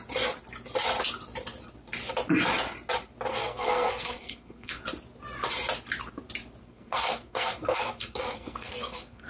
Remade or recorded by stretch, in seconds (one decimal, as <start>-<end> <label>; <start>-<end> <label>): 0.0-3.3 recorded; 3.3-4.8 remade; 4.8-6.6 recorded; 6.6-9.3 remade

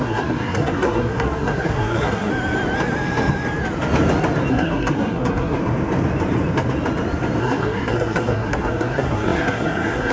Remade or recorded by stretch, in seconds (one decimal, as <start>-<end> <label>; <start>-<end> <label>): 0.0-2.3 remade; 2.3-4.5 recorded; 4.5-5.6 remade; 5.6-7.4 recorded; 7.4-10.1 remade

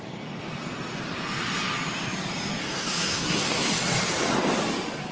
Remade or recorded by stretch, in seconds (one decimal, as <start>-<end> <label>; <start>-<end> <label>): 0.0-2.6 recorded; 2.6-3.7 remade; 3.7-5.1 recorded

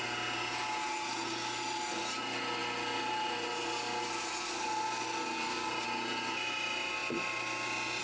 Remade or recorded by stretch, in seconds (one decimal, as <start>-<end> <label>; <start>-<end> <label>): 0.0-8.0 recorded

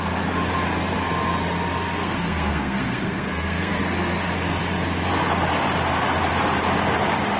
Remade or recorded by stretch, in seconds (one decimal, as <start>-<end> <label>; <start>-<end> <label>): 0.0-2.0 recorded; 2.0-3.8 remade; 3.8-7.4 recorded

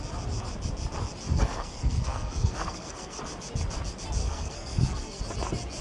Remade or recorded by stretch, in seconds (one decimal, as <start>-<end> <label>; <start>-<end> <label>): 0.0-1.3 recorded; 1.3-3.2 remade; 3.2-4.2 recorded; 4.2-5.2 remade; 5.2-5.8 recorded

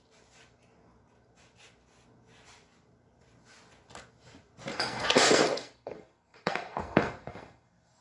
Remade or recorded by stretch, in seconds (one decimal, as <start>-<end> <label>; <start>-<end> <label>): 0.0-4.7 recorded; 4.7-8.0 remade

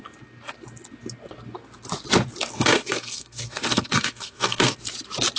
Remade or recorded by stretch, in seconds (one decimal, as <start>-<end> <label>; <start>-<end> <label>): 0.0-2.5 recorded; 2.5-4.7 remade; 4.7-5.4 recorded